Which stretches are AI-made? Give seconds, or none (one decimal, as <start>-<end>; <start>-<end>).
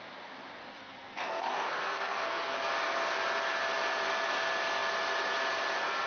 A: 0.6-2.7